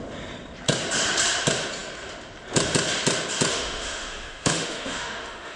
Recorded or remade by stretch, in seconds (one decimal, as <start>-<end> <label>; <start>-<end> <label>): 0.0-3.5 recorded; 3.5-5.6 remade